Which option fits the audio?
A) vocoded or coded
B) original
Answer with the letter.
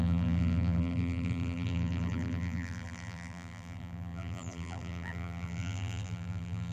A